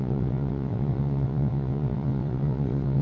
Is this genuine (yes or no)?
no